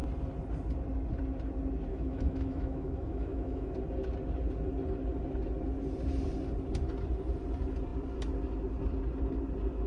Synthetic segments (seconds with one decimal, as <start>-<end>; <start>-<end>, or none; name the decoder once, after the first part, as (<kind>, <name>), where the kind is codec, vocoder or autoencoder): 1.9-3.7 (autoencoder, DAC-VAE)